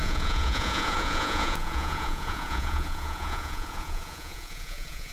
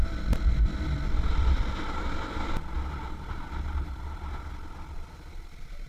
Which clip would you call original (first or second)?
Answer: second